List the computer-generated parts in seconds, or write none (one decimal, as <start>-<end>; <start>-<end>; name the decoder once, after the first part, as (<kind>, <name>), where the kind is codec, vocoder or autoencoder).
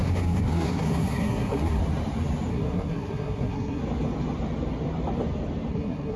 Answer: 0.0-1.8 (codec, SNAC); 2.5-3.8; 5.7-6.2